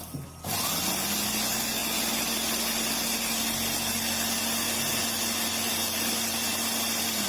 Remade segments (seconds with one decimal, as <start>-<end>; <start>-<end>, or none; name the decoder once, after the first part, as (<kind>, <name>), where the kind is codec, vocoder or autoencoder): none